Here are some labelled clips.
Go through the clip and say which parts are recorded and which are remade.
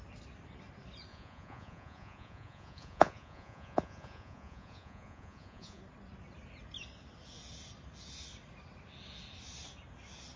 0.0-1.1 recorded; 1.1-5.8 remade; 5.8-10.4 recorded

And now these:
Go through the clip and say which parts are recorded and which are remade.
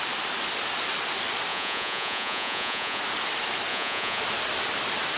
0.0-1.5 recorded; 1.5-3.0 remade; 3.0-3.7 recorded; 3.7-4.2 remade; 4.2-5.2 recorded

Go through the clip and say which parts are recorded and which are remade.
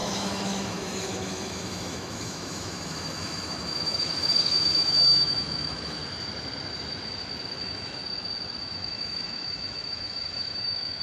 0.0-6.0 remade; 6.0-7.6 recorded; 7.6-8.0 remade; 8.0-8.6 recorded; 8.6-11.0 remade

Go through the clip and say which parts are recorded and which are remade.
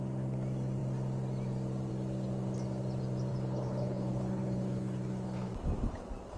0.0-3.3 recorded; 3.3-5.5 remade; 5.5-6.4 recorded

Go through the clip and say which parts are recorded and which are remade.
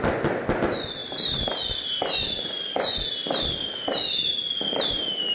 0.0-5.3 recorded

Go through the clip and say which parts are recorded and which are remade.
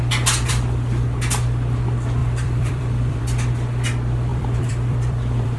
0.0-2.2 recorded; 2.2-3.2 remade; 3.2-4.3 recorded; 4.3-5.6 remade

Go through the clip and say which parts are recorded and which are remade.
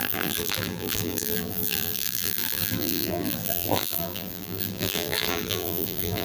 0.0-6.2 remade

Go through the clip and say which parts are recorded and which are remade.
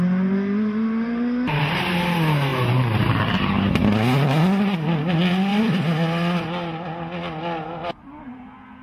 0.0-8.8 recorded